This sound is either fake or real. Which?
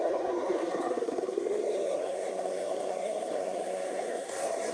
fake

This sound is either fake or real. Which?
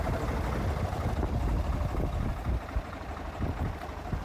real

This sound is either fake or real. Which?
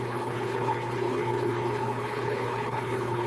fake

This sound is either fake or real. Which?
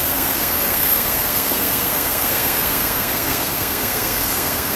fake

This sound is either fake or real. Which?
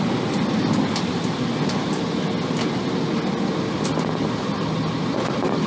real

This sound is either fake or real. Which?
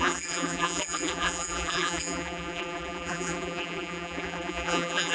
fake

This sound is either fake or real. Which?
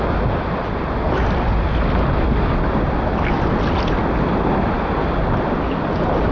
real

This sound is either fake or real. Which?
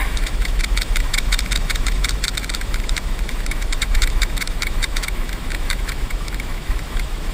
fake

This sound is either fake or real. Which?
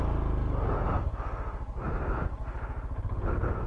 real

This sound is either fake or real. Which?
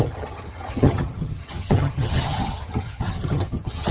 fake